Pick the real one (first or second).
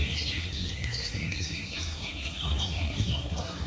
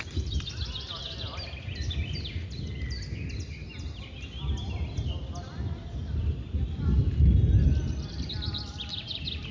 second